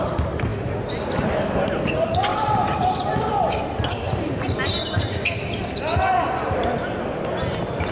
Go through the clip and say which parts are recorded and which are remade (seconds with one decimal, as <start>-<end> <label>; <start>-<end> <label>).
0.0-2.3 recorded; 2.3-4.6 remade; 4.6-7.9 recorded